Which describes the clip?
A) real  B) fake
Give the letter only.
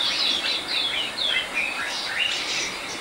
A